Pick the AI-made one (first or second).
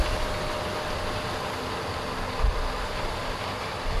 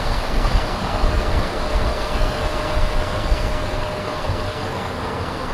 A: second